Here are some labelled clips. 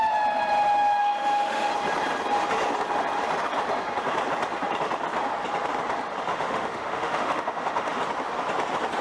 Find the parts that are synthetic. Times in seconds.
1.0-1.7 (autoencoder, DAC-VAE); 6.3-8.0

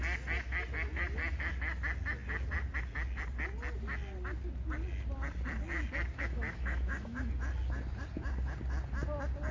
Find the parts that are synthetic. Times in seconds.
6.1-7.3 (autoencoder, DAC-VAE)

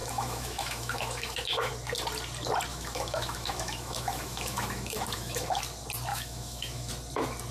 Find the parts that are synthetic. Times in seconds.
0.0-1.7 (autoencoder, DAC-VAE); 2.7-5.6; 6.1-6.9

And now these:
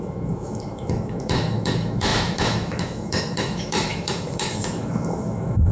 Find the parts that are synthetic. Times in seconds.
0.0-5.7 (autoencoder, DAC-VAE)

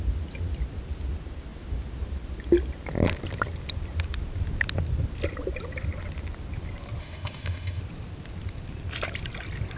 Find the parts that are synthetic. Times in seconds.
7.0-7.8 (autoencoder, DAC-VAE)